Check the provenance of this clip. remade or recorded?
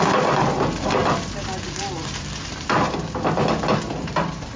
recorded